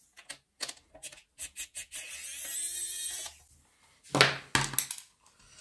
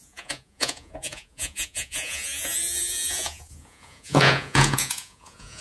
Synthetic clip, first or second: second